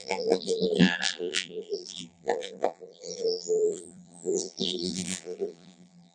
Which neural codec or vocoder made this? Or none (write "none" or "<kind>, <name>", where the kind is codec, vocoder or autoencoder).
vocoder, BigVGAN v2